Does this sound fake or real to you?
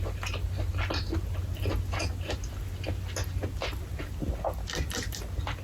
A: real